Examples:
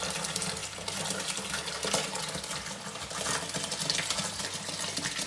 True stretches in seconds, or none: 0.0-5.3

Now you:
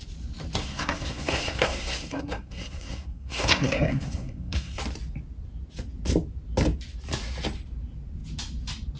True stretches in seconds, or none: 0.0-0.6; 4.8-9.0